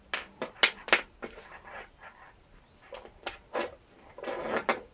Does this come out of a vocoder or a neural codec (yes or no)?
no